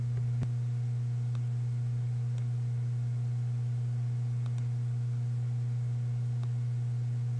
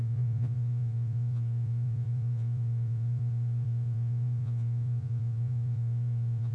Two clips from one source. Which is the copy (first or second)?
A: second